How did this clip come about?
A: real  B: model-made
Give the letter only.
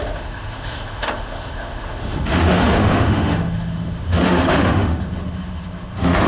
B